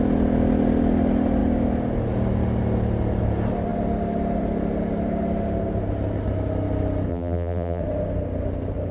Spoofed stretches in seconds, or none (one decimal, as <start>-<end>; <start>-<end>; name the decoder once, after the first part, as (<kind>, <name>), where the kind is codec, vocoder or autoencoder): 7.1-7.8 (vocoder, BigVGAN v2)